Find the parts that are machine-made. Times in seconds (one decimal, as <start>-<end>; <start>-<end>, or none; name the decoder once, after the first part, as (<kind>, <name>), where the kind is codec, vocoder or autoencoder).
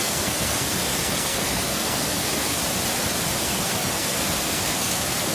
0.0-2.6 (codec, SNAC); 3.4-5.3